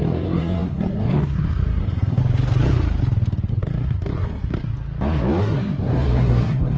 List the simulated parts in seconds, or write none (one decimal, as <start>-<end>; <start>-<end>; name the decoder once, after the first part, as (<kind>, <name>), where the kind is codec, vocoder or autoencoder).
0.0-2.2 (codec, SNAC); 3.5-4.7; 5.4-6.8